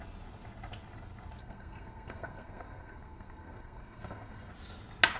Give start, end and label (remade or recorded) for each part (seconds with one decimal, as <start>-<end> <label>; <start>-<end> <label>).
0.0-1.4 recorded; 1.4-4.5 remade; 4.5-5.2 recorded